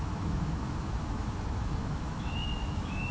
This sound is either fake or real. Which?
fake